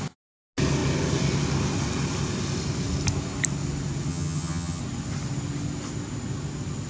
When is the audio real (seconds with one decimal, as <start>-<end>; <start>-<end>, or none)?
0.0-4.1; 4.8-6.9